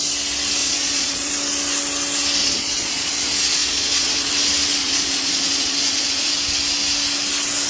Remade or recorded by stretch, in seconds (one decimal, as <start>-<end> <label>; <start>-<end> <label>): 0.0-0.6 recorded; 0.6-1.3 remade; 1.3-2.4 recorded; 2.4-3.1 remade; 3.1-3.6 recorded; 3.6-4.3 remade; 4.3-4.8 recorded; 4.8-6.3 remade; 6.3-7.7 recorded

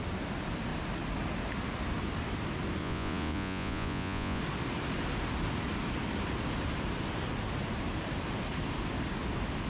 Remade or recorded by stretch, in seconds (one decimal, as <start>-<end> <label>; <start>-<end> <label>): 0.0-2.8 recorded; 2.8-4.4 remade; 4.4-9.7 recorded